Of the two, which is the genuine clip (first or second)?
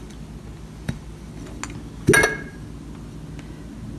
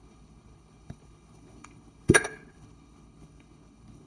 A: first